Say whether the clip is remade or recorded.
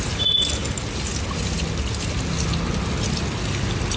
recorded